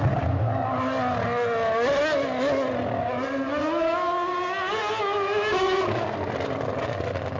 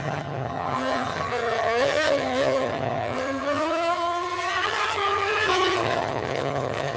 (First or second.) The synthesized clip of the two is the second